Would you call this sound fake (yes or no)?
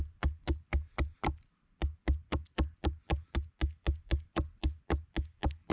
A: no